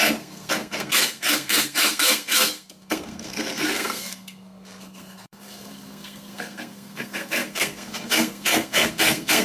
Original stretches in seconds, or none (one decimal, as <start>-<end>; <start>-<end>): none